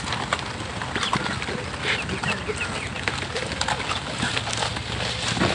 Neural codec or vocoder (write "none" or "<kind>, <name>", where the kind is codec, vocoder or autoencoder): none